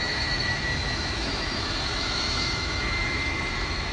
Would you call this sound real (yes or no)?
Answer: no